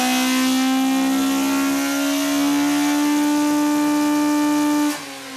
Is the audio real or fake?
real